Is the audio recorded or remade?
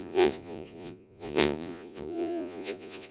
remade